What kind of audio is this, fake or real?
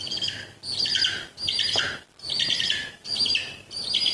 real